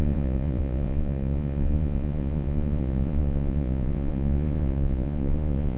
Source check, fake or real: fake